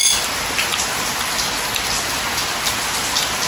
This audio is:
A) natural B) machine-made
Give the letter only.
A